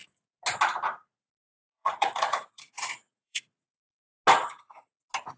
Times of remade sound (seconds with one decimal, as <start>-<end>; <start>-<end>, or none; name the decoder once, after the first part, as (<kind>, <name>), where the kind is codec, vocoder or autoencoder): 1.4-3.9 (vocoder, Vocos)